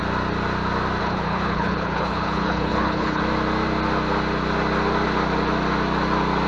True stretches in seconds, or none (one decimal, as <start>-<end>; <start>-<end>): 0.0-1.0; 3.2-6.5